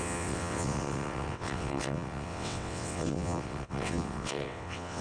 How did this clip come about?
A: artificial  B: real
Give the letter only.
A